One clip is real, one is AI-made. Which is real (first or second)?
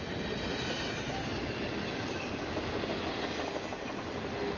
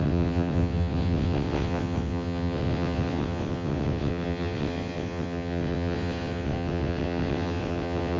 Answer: first